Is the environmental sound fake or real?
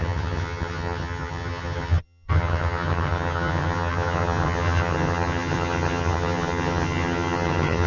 fake